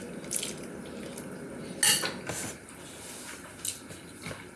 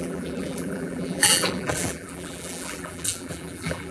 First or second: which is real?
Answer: first